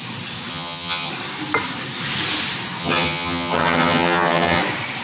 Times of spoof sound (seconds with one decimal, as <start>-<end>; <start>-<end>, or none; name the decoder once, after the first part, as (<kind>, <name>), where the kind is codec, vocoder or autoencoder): 0.5-1.1 (vocoder, HiFi-GAN); 2.8-4.6